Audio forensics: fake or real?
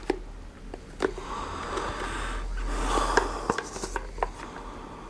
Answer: real